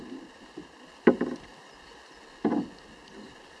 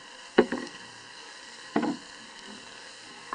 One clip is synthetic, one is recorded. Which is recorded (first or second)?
first